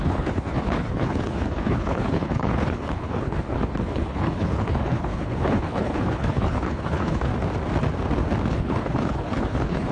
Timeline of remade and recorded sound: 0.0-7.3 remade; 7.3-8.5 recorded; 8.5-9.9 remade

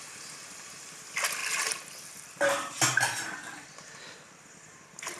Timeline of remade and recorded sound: 0.0-5.2 recorded